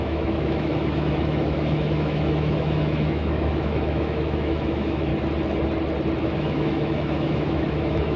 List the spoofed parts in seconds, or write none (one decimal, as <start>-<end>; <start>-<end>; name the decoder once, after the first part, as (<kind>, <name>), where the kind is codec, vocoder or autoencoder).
0.0-5.1 (autoencoder, DAC-VAE); 6.2-8.2